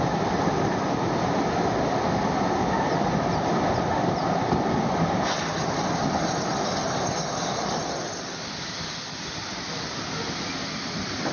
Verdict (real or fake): real